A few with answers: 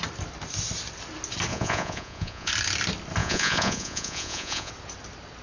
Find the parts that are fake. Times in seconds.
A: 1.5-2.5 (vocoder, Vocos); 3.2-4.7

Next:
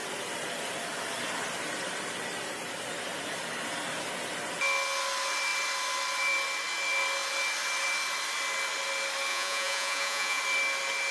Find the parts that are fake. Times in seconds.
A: 9.3-10.4 (vocoder, Vocos)

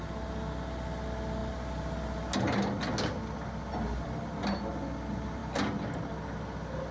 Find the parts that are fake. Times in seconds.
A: none

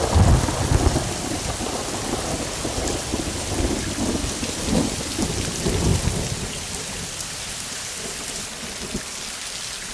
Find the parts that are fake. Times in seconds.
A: none

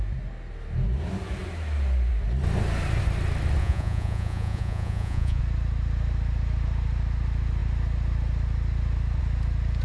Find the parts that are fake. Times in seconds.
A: 3.6-5.4 (vocoder, Vocos)

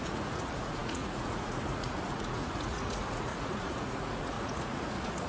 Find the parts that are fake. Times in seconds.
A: 0.0-5.3 (vocoder, Vocos)

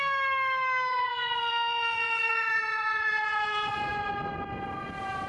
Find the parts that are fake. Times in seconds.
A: 0.9-4.1 (vocoder, Vocos)